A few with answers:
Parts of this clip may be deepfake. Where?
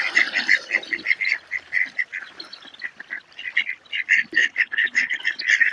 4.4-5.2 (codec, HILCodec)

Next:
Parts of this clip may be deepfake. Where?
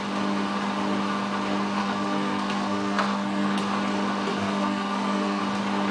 1.8-3.6 (codec, SNAC); 4.3-5.4